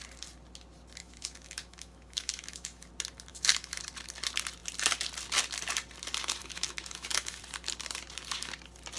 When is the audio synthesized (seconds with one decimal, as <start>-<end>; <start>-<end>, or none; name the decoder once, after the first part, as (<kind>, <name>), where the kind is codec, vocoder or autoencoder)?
1.0-2.9 (autoencoder, DAC-VAE); 3.3-3.8; 6.4-7.4